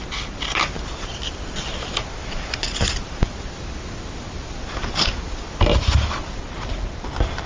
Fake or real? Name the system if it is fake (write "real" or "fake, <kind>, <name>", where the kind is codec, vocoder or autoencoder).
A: real